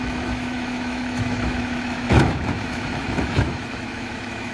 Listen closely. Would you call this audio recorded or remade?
remade